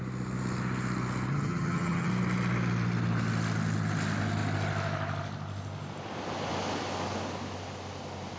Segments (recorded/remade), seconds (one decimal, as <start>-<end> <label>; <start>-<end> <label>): 0.0-1.3 recorded; 1.3-2.1 remade; 2.1-8.4 recorded